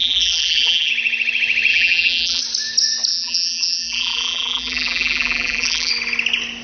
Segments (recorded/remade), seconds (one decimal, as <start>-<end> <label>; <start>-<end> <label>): 0.0-0.9 remade; 0.9-1.7 recorded; 1.7-2.4 remade; 2.4-3.1 recorded; 3.1-5.9 remade; 5.9-6.6 recorded